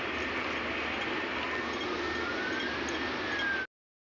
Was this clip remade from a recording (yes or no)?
no